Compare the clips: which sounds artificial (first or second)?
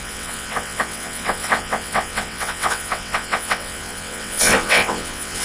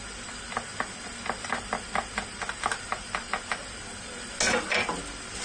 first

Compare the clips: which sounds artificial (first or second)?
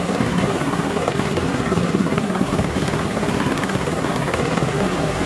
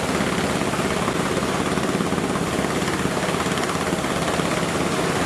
first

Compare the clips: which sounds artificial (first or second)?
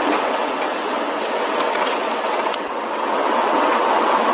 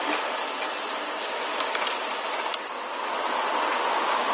first